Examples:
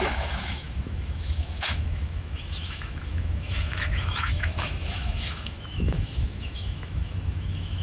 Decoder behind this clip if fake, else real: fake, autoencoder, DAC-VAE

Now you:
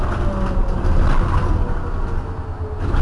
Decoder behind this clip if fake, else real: real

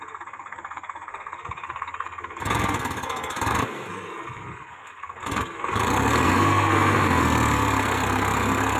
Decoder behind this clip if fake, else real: fake, codec, SNAC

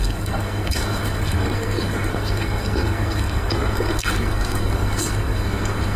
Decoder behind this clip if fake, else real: fake, codec, SNAC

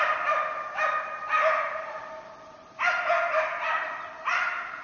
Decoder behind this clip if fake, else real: real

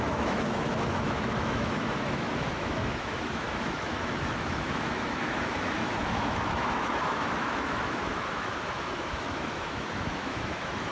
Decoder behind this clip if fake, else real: fake, autoencoder, DAC-VAE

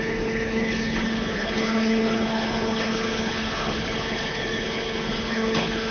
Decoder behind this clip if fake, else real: fake, codec, HILCodec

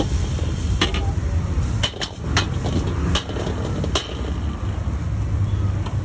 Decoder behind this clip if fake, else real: real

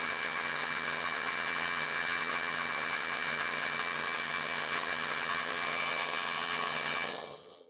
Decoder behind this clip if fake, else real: fake, vocoder, HiFi-GAN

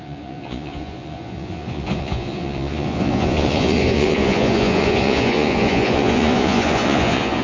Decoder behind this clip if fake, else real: fake, vocoder, Vocos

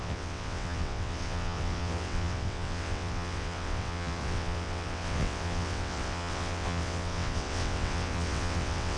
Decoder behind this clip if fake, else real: fake, vocoder, WaveNeXt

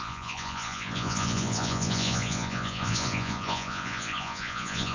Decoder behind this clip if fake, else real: fake, vocoder, Vocos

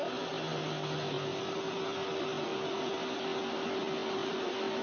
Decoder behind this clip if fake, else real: real